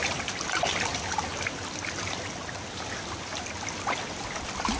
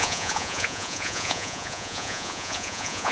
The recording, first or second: first